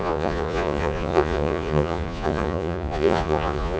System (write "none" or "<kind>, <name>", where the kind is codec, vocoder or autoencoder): vocoder, Vocos